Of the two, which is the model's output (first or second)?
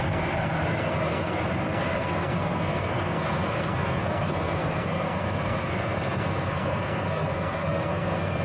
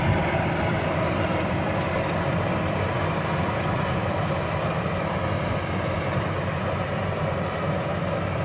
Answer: first